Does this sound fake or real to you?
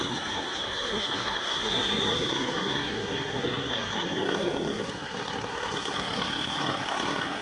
fake